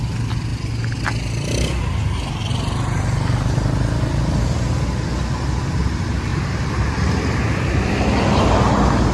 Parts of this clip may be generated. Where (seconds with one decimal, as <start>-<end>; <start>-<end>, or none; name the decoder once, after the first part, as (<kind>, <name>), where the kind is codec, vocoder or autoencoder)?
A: 6.3-8.6 (vocoder, BigVGAN v2)

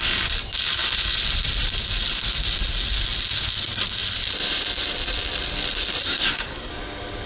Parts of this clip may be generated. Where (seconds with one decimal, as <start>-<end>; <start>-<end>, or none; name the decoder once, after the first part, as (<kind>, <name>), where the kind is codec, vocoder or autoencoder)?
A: 6.0-6.7 (codec, SNAC)

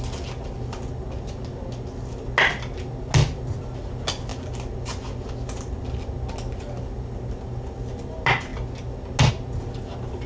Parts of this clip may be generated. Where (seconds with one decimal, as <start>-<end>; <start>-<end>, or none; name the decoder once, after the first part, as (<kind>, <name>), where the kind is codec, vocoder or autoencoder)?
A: none